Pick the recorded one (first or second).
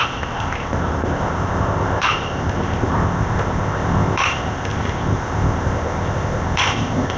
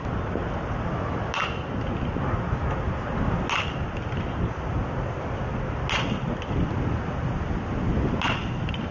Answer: second